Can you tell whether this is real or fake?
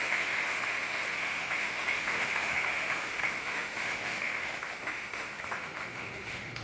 fake